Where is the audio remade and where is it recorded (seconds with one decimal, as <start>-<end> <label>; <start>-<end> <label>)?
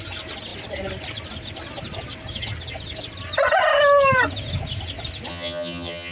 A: 0.0-5.3 recorded; 5.3-6.1 remade